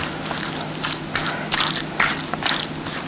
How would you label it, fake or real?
real